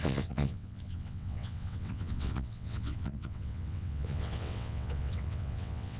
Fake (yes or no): yes